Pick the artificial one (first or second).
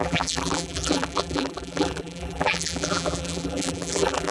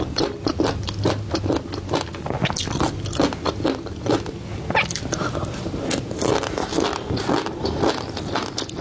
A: first